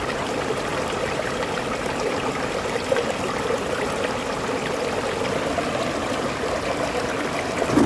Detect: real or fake real